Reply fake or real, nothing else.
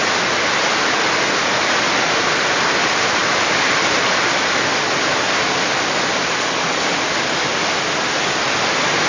real